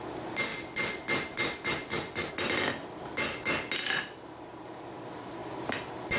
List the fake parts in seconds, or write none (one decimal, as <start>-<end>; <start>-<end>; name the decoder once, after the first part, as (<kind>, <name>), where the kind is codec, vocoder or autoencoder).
none